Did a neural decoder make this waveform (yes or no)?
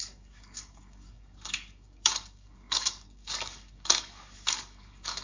yes